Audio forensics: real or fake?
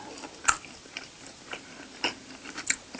fake